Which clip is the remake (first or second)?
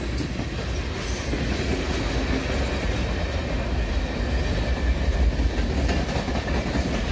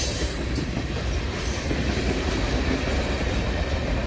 second